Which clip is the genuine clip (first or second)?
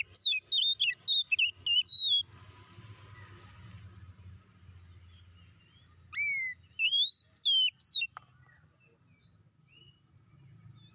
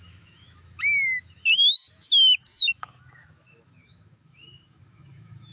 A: first